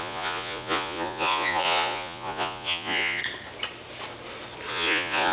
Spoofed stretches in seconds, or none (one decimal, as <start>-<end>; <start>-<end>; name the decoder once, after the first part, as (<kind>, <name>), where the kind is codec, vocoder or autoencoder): 0.0-3.2 (vocoder, Vocos); 4.7-5.3